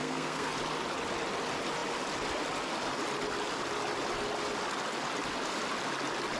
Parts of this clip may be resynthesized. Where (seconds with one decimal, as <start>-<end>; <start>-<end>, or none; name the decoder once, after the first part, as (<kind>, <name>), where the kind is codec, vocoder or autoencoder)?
0.0-0.5 (codec, SNAC)